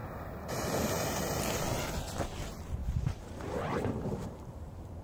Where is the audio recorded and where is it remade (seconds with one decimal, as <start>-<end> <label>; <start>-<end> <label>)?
0.0-2.8 recorded; 2.8-5.0 remade